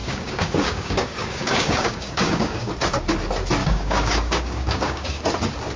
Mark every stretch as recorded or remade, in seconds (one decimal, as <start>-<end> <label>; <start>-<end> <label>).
0.0-2.7 remade; 2.7-3.6 recorded; 3.6-5.2 remade; 5.2-5.8 recorded